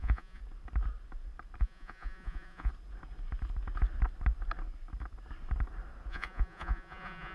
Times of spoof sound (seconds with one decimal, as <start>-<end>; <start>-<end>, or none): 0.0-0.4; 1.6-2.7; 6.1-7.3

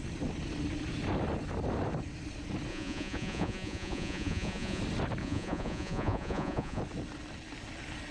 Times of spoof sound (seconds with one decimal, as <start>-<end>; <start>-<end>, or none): 2.7-4.8; 5.2-6.8

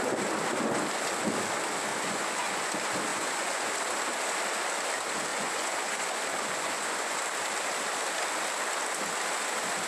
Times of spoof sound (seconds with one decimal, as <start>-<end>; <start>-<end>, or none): 1.9-2.7; 3.1-3.7; 5.3-7.2

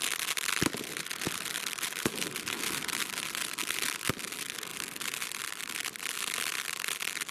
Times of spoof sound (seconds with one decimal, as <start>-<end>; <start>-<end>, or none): 1.1-3.6; 4.7-5.4